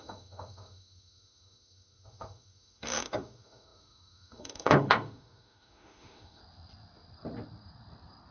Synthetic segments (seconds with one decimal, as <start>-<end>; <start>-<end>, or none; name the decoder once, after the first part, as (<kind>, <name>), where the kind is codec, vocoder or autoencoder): 0.0-6.4 (autoencoder, DAC-VAE)